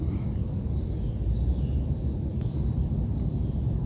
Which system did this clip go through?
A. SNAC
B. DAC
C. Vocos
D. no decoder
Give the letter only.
D